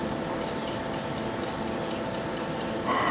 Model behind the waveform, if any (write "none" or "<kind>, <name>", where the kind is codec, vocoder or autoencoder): none